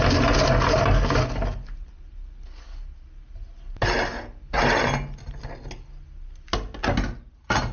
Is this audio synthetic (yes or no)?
no